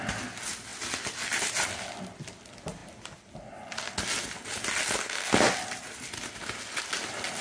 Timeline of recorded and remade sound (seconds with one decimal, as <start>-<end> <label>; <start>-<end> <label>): 0.0-7.4 recorded